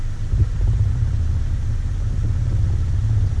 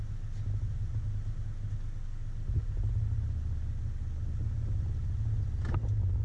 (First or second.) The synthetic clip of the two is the first